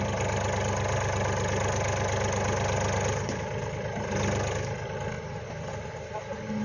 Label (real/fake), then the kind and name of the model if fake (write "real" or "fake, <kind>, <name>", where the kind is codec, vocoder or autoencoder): real